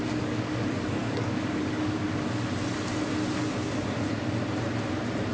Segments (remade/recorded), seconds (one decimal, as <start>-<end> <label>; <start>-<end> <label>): 0.0-2.1 remade; 2.1-5.3 recorded